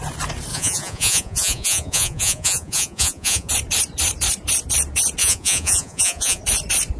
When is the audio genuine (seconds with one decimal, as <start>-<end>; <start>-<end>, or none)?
0.0-0.5; 3.5-5.2; 6.4-7.0

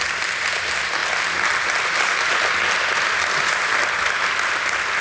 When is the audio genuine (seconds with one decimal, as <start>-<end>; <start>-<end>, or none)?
0.0-5.0

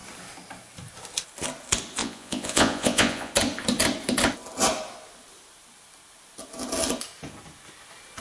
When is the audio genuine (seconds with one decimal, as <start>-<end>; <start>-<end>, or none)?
0.0-2.0; 3.3-8.2

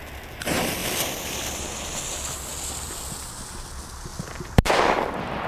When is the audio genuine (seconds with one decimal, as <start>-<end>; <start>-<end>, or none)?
0.0-0.8; 1.6-2.5; 3.1-4.1; 4.7-5.5